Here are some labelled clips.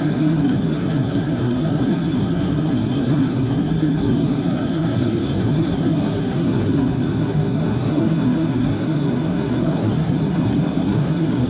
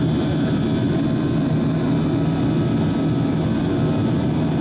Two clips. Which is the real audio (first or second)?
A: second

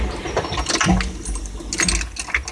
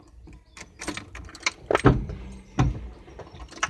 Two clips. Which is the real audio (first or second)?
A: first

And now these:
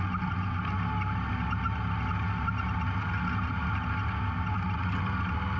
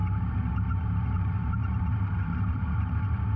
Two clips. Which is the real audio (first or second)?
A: first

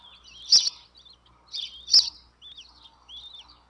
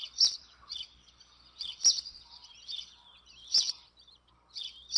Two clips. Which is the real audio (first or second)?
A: first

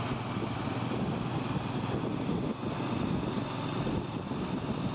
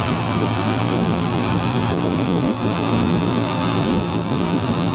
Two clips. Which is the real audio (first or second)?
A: first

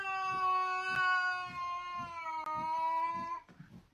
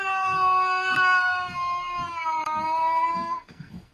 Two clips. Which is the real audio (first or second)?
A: first